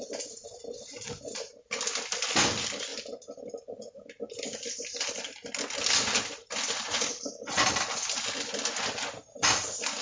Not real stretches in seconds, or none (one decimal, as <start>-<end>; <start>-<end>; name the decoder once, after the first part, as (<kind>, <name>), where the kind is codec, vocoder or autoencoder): none